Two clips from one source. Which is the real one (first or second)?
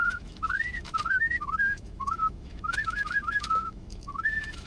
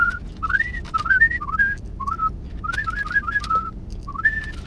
second